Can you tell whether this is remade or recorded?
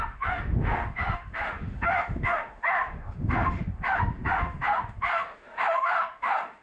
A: remade